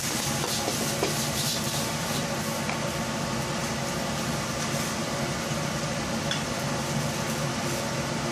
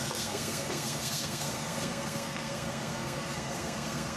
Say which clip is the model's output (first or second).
second